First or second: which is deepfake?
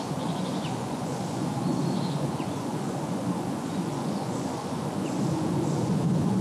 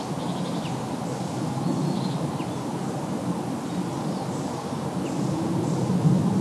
first